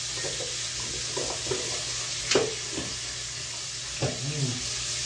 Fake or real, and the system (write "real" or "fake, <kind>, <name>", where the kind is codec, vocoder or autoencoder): real